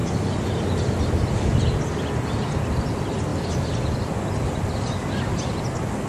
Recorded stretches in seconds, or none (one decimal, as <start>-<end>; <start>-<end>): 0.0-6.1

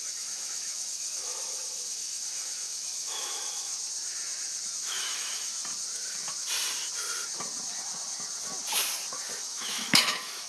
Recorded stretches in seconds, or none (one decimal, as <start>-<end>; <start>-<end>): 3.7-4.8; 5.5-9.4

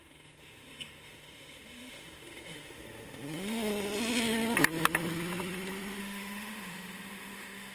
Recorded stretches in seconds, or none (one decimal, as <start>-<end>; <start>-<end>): 3.7-6.0

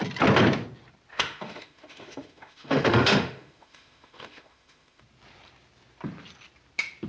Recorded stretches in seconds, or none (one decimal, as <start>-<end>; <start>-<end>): 0.0-1.1; 5.0-7.1

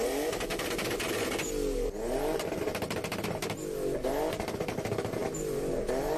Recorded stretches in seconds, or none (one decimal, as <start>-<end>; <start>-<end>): 0.0-6.2